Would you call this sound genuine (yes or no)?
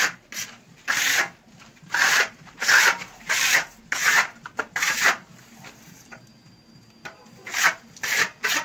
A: no